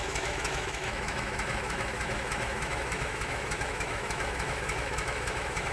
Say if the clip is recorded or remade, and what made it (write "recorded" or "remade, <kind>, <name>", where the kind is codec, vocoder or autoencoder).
remade, autoencoder, DAC-VAE